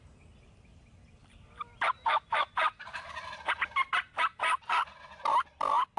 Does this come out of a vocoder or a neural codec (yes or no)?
no